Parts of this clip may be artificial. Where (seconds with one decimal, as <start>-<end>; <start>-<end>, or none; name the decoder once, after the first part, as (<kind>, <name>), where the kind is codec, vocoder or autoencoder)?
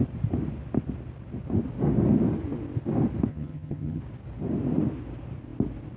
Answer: 3.3-4.0 (vocoder, HiFi-GAN)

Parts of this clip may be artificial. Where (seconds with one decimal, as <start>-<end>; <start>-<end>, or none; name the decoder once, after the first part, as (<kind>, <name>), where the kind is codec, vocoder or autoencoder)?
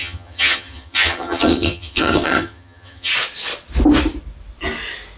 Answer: 0.0-3.1 (vocoder, HiFi-GAN)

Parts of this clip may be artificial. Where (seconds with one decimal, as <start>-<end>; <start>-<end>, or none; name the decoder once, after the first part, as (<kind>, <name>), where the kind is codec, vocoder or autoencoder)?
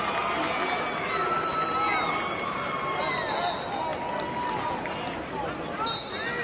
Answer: none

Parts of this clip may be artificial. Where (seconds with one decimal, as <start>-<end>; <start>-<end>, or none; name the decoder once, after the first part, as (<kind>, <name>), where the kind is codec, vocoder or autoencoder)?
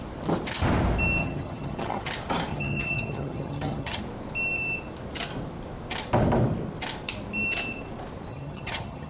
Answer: 1.2-2.0 (vocoder, HiFi-GAN); 2.5-4.0; 8.3-9.1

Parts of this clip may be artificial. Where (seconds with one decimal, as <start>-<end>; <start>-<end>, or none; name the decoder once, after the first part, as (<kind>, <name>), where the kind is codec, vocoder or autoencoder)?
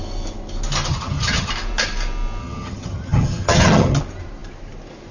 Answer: 0.9-1.5 (vocoder, HiFi-GAN); 2.4-4.0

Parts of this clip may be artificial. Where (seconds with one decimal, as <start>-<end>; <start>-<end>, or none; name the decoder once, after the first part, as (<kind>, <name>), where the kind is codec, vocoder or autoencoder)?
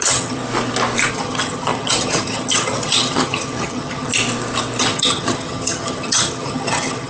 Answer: 0.0-0.4 (vocoder, HiFi-GAN); 1.1-4.1; 4.8-7.1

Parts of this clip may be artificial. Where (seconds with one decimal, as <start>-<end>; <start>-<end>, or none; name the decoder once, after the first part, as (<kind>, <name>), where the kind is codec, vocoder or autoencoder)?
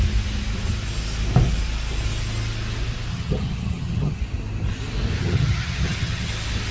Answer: 3.1-4.2 (vocoder, HiFi-GAN); 5.2-6.3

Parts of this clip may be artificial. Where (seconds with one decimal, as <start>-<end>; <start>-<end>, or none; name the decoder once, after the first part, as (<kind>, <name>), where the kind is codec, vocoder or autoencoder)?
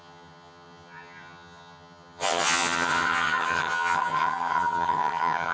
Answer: 0.0-5.5 (vocoder, HiFi-GAN)